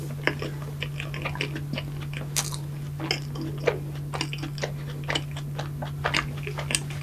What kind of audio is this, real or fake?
real